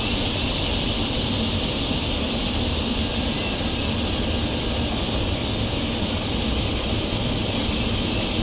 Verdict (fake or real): real